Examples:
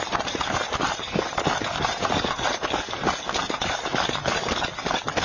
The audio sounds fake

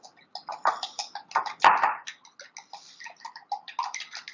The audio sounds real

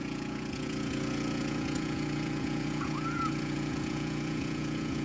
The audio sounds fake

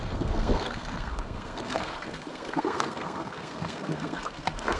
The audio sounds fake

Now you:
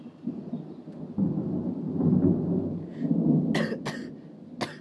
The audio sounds real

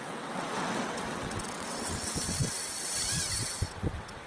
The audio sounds fake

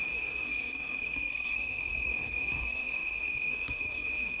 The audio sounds fake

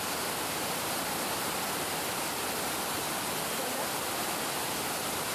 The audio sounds real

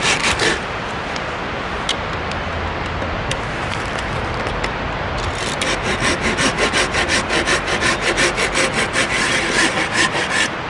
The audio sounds real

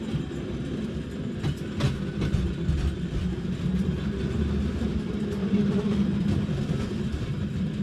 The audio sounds real